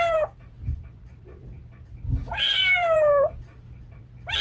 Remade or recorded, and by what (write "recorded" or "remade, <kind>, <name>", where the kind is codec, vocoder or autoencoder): remade, vocoder, BigVGAN v2